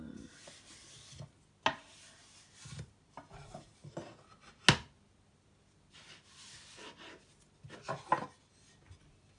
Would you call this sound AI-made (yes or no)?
no